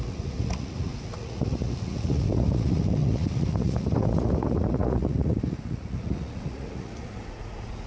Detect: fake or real fake